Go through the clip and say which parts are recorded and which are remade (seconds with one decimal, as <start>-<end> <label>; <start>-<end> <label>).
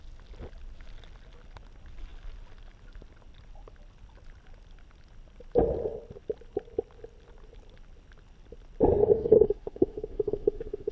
0.0-9.0 recorded; 9.0-10.9 remade